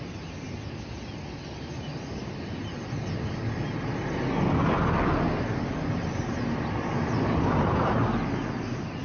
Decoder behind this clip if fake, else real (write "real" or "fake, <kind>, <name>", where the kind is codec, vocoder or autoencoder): real